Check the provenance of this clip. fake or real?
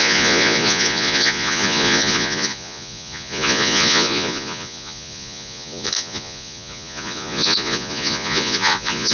fake